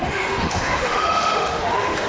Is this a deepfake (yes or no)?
yes